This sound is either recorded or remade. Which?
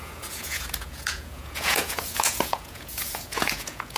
remade